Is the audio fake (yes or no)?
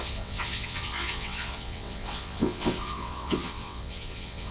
yes